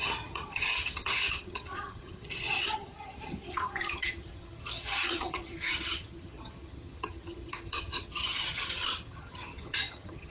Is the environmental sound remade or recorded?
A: remade